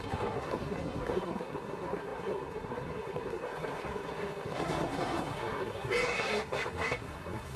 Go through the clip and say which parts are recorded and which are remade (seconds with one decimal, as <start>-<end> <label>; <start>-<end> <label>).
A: 0.0-7.6 remade